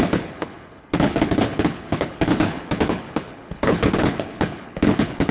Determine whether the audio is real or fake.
fake